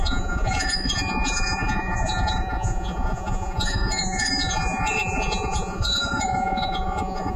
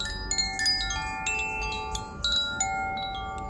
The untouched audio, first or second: second